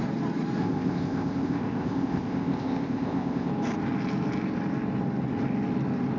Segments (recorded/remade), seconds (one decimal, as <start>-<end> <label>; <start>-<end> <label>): 0.0-0.6 recorded; 0.6-3.5 remade; 3.5-6.2 recorded

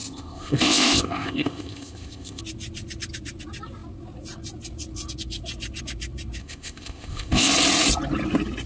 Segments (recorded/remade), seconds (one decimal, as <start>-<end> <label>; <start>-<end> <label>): 0.0-2.4 remade; 2.4-6.4 recorded; 6.4-7.5 remade; 7.5-8.7 recorded

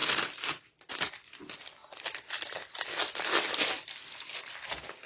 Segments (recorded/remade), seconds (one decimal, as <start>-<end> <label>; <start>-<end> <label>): 0.0-5.1 recorded

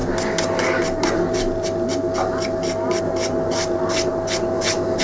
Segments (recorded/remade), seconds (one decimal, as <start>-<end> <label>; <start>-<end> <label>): 0.0-5.0 recorded

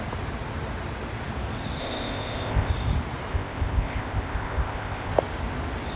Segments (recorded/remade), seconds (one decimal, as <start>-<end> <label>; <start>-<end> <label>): 0.0-1.8 recorded; 1.8-2.7 remade; 2.7-3.3 recorded; 3.3-5.1 remade; 5.1-6.0 recorded

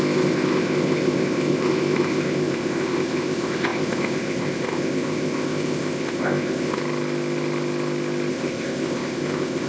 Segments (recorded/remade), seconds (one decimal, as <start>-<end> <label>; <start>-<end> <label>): 0.0-6.8 remade; 6.8-8.3 recorded; 8.3-9.7 remade

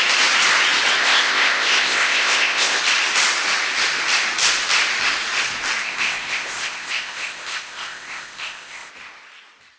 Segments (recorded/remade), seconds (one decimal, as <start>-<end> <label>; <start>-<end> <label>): 0.0-1.0 recorded; 1.0-2.8 remade; 2.8-5.8 recorded; 5.8-8.9 remade; 8.9-9.8 recorded

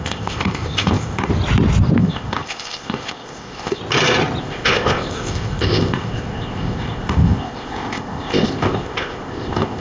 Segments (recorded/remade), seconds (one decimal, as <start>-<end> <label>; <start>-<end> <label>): 0.0-1.3 remade; 1.3-2.0 recorded; 2.0-3.8 remade; 3.8-4.4 recorded; 4.4-9.8 remade